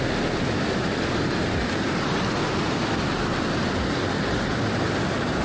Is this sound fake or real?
real